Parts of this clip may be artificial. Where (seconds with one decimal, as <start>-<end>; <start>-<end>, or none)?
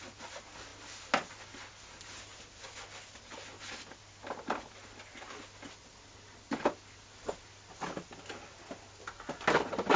none